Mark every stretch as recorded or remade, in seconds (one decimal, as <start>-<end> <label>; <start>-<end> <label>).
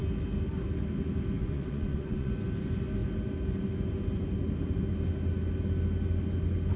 0.0-1.4 recorded; 1.4-2.3 remade; 2.3-6.8 recorded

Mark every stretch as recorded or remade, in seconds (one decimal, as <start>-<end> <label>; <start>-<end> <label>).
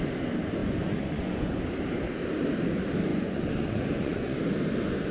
0.0-0.6 recorded; 0.6-1.6 remade; 1.6-3.1 recorded; 3.1-4.4 remade; 4.4-5.1 recorded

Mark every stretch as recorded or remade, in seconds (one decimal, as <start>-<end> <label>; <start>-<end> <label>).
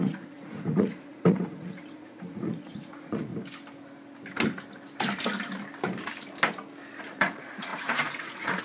0.0-3.3 remade; 3.3-7.0 recorded; 7.0-8.6 remade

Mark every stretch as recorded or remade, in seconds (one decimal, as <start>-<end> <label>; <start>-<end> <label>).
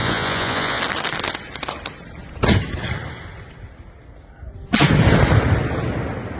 0.0-0.8 remade; 0.8-6.4 recorded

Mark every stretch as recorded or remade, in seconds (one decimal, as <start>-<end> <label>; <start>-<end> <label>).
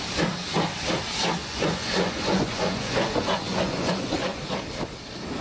0.0-1.4 recorded; 1.4-4.4 remade; 4.4-5.4 recorded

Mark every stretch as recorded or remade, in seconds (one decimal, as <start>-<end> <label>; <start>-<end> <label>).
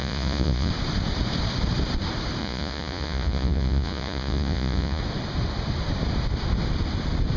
0.0-0.7 remade; 0.7-2.4 recorded; 2.4-5.0 remade; 5.0-7.4 recorded